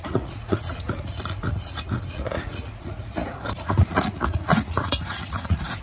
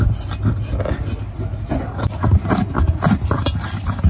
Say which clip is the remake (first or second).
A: first